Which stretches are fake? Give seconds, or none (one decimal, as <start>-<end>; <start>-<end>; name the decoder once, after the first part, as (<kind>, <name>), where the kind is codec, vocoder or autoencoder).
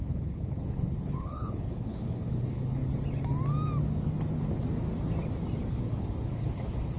0.0-2.8 (codec, HILCodec); 5.7-7.0